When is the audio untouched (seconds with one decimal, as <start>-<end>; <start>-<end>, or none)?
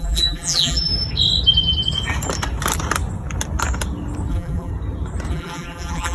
0.9-4.3; 4.7-5.3